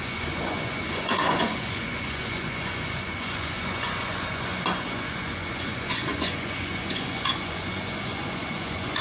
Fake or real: fake